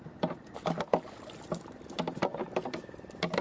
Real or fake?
real